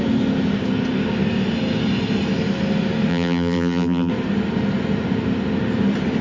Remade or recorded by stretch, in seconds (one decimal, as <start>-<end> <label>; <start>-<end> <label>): 0.0-3.1 recorded; 3.1-4.1 remade; 4.1-6.2 recorded